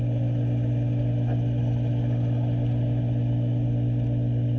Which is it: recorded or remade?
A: recorded